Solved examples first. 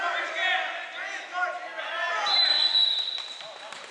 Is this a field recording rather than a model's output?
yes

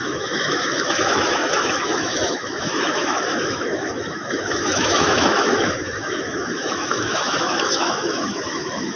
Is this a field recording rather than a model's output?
no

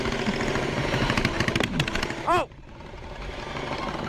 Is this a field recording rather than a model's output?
yes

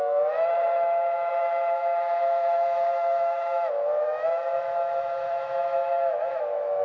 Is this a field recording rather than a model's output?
no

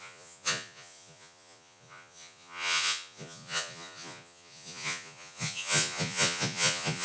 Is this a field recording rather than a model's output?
no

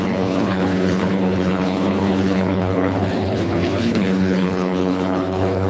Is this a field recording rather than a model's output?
no